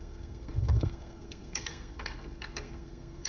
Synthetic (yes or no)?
yes